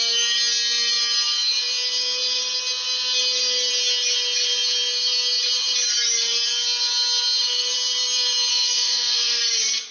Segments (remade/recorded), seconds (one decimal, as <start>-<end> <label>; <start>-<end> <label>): 0.0-8.5 recorded; 8.5-9.4 remade; 9.4-9.9 recorded